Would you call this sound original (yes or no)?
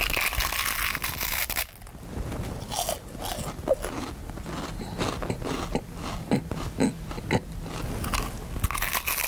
yes